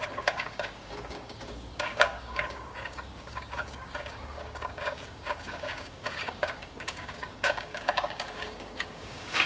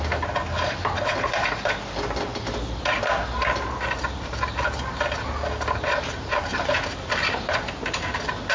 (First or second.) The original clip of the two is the second